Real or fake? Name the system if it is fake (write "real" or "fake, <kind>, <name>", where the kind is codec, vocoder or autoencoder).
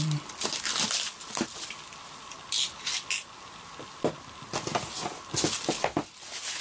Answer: real